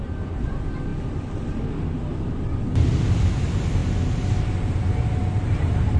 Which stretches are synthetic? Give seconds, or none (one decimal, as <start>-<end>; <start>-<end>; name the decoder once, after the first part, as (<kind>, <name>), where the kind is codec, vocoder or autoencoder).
none